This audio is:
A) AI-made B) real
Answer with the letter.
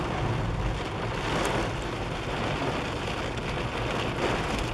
B